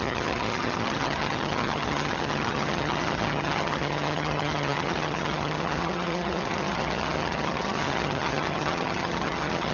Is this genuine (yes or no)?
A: no